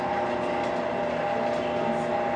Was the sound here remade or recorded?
recorded